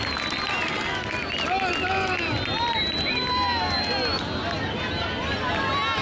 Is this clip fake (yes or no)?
no